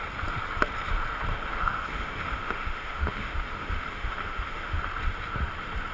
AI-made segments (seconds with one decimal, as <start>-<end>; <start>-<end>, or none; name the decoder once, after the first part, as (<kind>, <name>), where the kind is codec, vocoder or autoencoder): 1.3-4.8 (autoencoder, DAC-VAE)